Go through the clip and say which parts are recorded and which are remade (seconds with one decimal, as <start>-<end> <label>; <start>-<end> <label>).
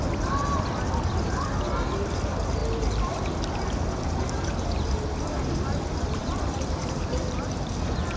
0.0-6.2 recorded; 6.2-7.7 remade; 7.7-8.2 recorded